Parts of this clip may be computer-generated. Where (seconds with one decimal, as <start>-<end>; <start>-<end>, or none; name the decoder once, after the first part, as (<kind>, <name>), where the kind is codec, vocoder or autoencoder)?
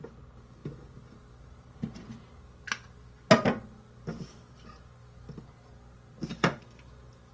6.3-7.3 (vocoder, BigVGAN v2)